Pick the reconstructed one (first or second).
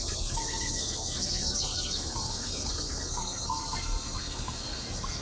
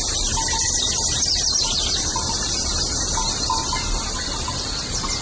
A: first